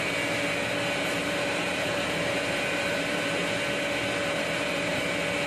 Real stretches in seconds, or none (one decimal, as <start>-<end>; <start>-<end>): 0.0-1.2; 3.4-4.2; 5.0-5.5